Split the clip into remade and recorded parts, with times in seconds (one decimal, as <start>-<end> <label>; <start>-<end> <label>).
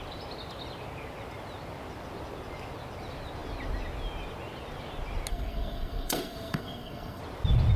0.0-5.3 recorded; 5.3-7.2 remade; 7.2-7.8 recorded